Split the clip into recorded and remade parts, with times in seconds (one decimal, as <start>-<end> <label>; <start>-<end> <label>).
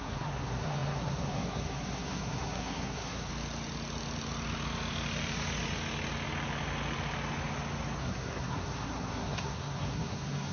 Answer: 0.0-3.3 remade; 3.3-8.0 recorded; 8.0-10.5 remade